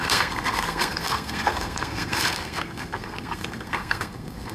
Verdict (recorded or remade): remade